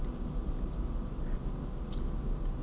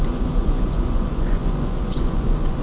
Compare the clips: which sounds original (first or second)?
first